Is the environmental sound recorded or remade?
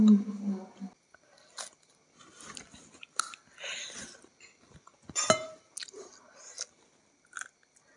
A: recorded